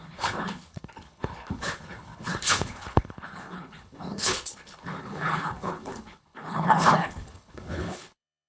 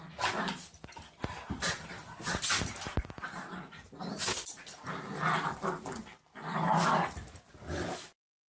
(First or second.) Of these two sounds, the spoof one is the first